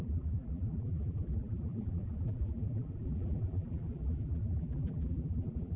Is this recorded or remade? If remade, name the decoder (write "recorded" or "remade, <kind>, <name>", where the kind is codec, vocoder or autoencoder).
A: remade, vocoder, BigVGAN v2